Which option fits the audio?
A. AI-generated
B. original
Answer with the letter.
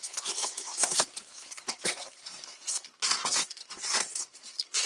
A